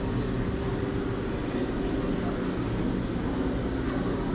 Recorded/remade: recorded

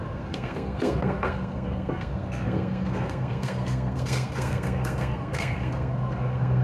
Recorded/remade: remade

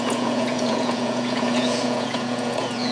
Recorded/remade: remade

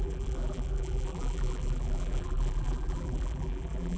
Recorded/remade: remade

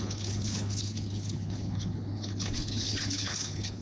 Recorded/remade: remade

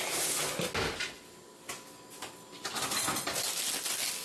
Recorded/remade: recorded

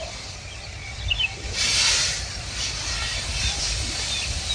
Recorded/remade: recorded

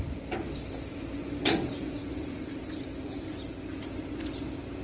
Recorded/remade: recorded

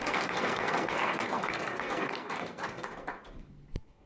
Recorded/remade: remade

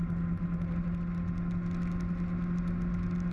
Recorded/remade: recorded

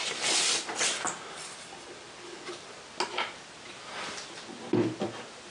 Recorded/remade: recorded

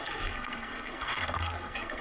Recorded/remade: remade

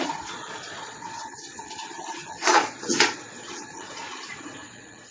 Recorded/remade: remade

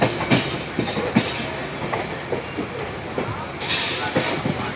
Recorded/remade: recorded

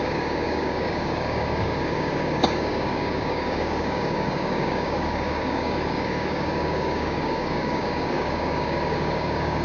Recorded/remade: remade